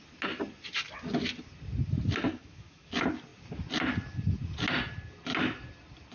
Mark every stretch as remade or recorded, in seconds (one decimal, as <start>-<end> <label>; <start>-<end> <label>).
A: 0.0-2.3 recorded; 2.3-2.9 remade; 2.9-6.1 recorded